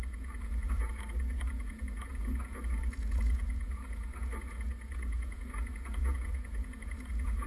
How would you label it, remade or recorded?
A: remade